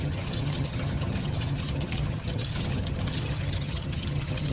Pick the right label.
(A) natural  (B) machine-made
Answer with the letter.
B